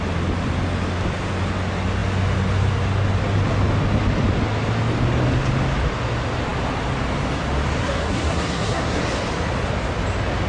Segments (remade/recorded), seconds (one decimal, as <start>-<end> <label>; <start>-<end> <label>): 0.0-7.8 recorded; 7.8-9.0 remade; 9.0-10.5 recorded